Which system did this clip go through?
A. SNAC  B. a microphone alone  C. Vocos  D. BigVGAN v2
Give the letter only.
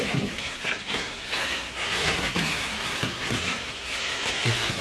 A